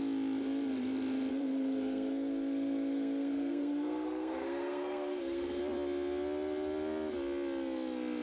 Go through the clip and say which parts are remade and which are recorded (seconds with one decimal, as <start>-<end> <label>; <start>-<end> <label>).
0.0-1.3 recorded; 1.3-5.6 remade; 5.6-8.2 recorded